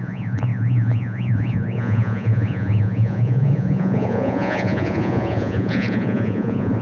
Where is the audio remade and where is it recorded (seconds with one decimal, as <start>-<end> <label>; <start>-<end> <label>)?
0.0-6.8 remade